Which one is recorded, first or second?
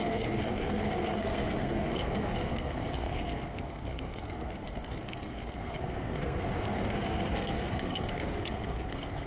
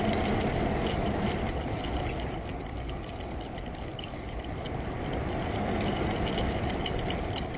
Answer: second